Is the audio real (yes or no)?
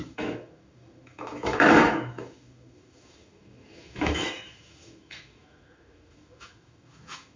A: no